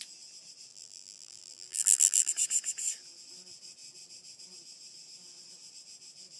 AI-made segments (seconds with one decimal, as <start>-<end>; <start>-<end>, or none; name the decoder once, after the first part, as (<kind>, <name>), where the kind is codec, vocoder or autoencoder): 0.7-2.3 (vocoder, BigVGAN v2)